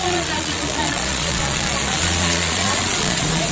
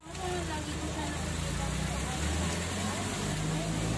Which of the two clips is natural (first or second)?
second